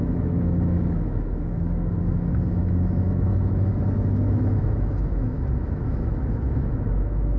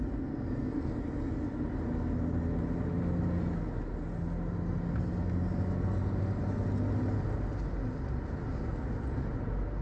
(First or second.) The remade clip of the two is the first